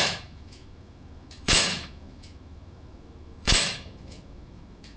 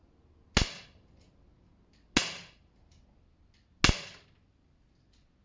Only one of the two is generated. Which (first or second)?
first